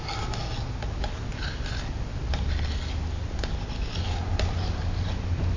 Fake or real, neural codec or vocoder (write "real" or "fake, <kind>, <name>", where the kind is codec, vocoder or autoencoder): real